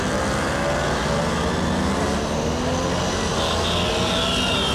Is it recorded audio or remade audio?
recorded